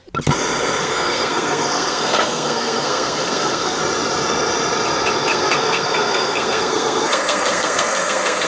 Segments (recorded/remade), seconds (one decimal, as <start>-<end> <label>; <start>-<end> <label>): 0.0-0.8 recorded; 0.8-3.8 remade; 3.8-5.3 recorded; 5.3-8.5 remade

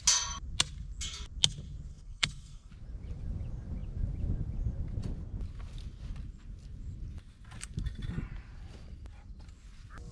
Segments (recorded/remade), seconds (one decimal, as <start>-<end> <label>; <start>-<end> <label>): 0.0-1.9 recorded; 1.9-2.7 remade; 2.7-10.1 recorded

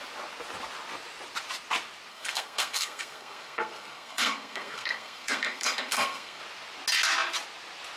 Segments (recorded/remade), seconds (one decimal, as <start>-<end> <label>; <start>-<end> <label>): 0.0-2.1 recorded; 2.1-6.4 remade; 6.4-8.0 recorded

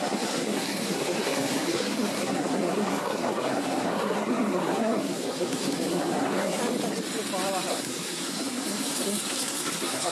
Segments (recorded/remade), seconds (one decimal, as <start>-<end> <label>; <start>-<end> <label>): 0.0-6.6 remade; 6.6-7.7 recorded; 7.7-10.1 remade